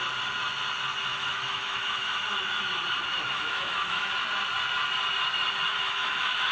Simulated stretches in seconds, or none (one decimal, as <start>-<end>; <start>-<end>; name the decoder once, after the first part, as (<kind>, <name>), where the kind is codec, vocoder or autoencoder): 1.1-2.7 (autoencoder, DAC-VAE); 3.1-4.1; 5.7-6.5